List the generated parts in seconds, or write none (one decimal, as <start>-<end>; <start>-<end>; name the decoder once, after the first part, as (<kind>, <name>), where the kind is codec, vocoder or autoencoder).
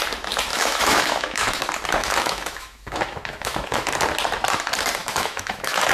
0.5-1.6 (autoencoder, DAC-VAE); 2.0-3.9; 5.0-5.9